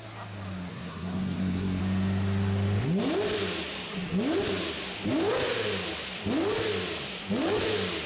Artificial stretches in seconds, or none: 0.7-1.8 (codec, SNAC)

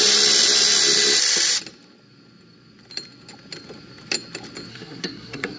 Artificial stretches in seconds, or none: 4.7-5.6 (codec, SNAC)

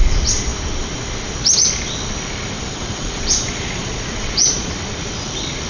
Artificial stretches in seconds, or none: 2.8-4.7 (vocoder, Vocos)